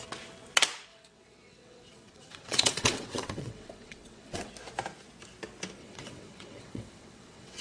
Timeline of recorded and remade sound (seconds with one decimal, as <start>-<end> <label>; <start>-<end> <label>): 0.0-0.9 recorded; 0.9-4.5 remade; 4.5-5.8 recorded; 5.8-7.6 remade